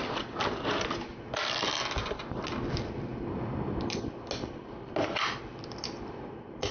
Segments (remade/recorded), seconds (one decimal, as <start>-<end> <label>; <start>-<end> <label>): 0.0-6.7 recorded